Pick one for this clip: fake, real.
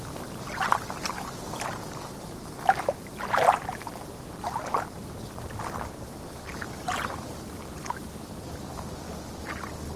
real